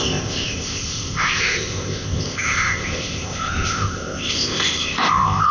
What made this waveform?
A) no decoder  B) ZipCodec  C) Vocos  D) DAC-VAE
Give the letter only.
B